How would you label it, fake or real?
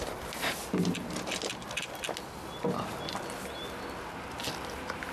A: real